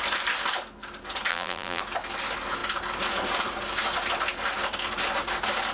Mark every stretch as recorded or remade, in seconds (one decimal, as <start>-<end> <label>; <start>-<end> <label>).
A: 0.0-1.3 recorded; 1.3-1.8 remade; 1.8-5.7 recorded